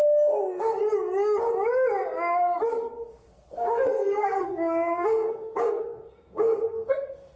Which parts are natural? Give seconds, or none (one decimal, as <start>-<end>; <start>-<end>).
0.8-3.1